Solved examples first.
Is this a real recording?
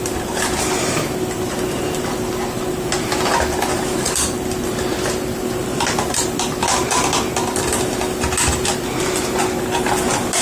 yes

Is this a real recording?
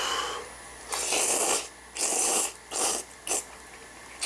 yes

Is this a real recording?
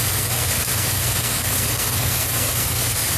no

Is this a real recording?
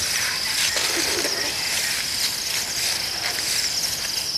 yes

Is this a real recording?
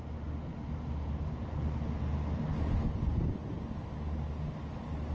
yes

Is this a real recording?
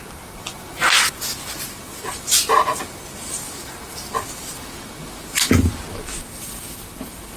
yes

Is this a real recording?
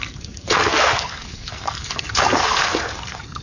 no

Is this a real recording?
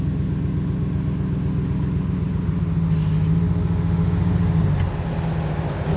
yes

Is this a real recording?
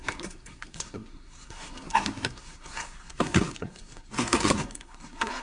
no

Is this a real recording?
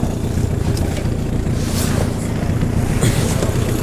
yes